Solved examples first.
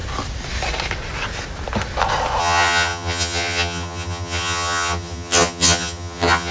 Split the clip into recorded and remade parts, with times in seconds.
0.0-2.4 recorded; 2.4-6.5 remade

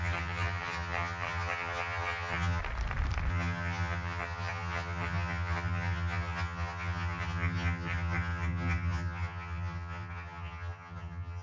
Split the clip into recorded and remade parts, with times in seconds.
0.0-2.6 remade; 2.6-3.3 recorded; 3.3-11.4 remade